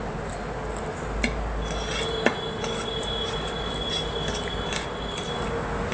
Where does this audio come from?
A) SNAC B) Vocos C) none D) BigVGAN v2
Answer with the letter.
C